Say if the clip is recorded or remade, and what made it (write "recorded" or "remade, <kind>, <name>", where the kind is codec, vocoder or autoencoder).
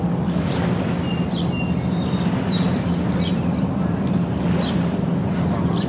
recorded